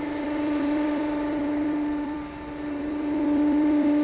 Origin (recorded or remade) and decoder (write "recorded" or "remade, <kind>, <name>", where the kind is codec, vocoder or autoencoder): remade, vocoder, BigVGAN v2